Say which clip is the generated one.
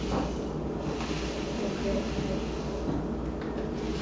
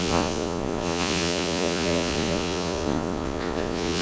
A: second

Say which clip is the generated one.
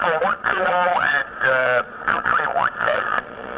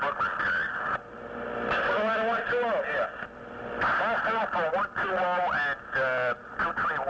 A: first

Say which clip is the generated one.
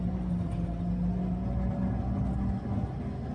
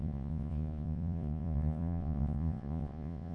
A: second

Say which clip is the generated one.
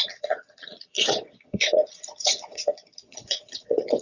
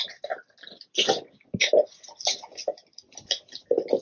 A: first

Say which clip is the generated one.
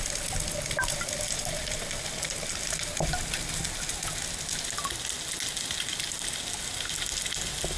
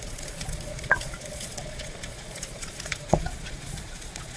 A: second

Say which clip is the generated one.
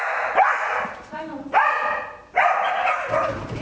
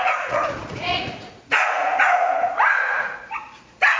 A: second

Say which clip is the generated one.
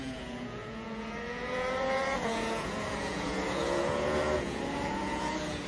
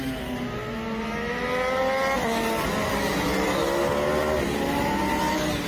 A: first